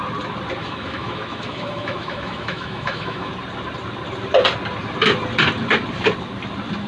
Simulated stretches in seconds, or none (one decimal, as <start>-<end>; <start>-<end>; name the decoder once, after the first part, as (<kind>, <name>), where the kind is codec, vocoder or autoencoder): 0.6-3.3 (autoencoder, DAC-VAE)